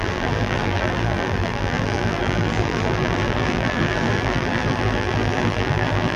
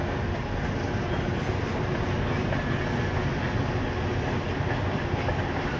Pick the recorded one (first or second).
second